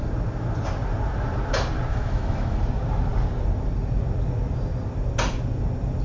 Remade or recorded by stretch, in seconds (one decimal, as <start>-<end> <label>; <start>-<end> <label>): 0.0-1.9 recorded; 1.9-2.6 remade; 2.6-6.0 recorded